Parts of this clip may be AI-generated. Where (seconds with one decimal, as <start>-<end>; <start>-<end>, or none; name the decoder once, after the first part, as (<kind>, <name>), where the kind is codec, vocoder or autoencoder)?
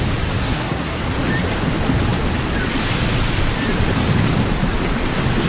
0.4-1.0 (codec, SNAC)